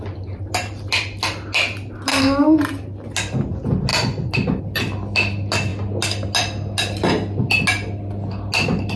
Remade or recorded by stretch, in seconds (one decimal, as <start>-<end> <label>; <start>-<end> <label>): 0.0-2.1 recorded; 2.1-2.6 remade; 2.6-9.0 recorded